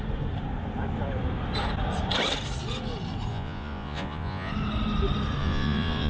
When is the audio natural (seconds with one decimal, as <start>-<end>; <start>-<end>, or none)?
0.0-3.3; 4.5-5.4